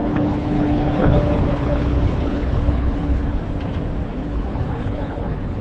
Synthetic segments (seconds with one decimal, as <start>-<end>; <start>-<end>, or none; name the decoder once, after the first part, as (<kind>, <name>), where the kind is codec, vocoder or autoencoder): 0.0-3.4 (codec, HILCodec); 4.2-5.6